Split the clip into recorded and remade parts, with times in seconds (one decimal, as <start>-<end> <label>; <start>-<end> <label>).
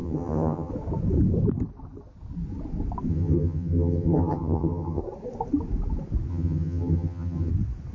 0.0-0.7 remade; 0.7-3.1 recorded; 3.1-5.0 remade; 5.0-6.3 recorded; 6.3-7.5 remade; 7.5-7.9 recorded